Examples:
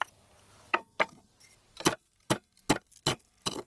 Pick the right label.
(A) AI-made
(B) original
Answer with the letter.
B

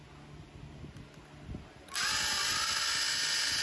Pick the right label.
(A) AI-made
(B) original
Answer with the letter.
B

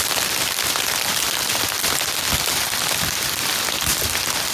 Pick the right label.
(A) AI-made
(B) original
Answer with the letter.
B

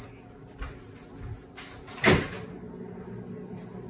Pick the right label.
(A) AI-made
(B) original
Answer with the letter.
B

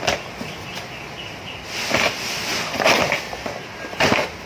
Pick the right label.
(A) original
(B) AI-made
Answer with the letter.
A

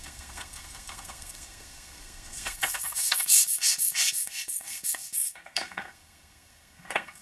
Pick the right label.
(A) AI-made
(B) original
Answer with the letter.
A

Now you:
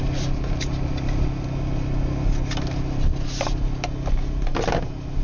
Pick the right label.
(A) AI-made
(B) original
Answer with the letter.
B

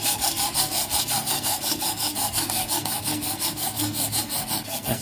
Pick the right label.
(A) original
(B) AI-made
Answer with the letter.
B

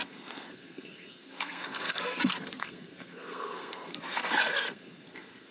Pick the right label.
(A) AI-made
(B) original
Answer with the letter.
A